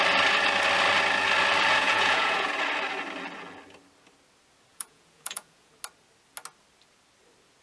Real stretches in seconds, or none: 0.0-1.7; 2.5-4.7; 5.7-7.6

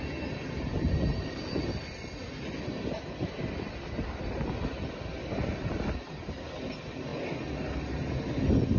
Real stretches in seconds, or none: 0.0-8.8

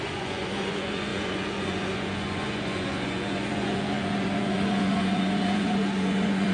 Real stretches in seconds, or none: none

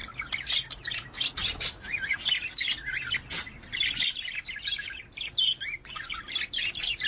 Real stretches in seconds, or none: 0.0-7.1

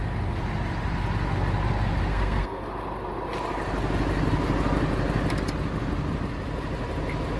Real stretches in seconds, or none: 0.0-2.1; 2.6-7.4